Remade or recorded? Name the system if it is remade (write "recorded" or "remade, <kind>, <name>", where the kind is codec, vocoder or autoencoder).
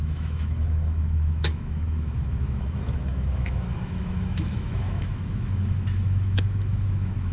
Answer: remade, autoencoder, DAC-VAE